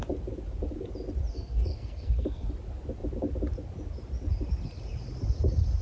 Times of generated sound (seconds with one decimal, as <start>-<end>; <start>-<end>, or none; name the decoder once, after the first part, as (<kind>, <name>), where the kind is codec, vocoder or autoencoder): 1.3-2.5 (codec, SNAC)